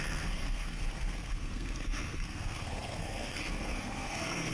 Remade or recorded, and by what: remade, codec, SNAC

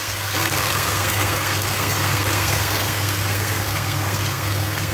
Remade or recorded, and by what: remade, codec, SNAC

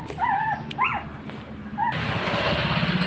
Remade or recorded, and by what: recorded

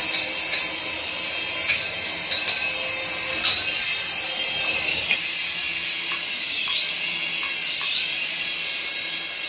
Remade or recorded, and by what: recorded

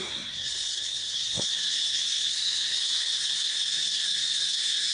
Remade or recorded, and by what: remade, codec, SNAC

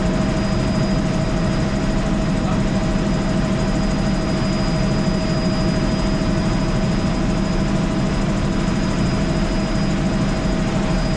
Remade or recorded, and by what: recorded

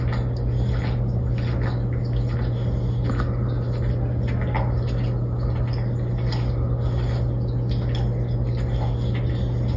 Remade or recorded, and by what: recorded